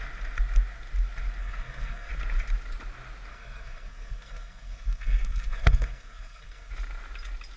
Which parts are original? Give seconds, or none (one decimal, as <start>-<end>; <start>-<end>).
0.0-1.4; 2.1-3.3; 6.7-7.6